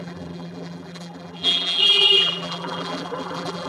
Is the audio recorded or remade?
remade